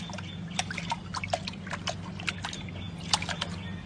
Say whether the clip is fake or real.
real